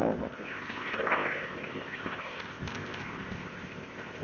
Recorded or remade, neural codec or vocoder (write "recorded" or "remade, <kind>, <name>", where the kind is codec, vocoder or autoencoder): remade, codec, ZipCodec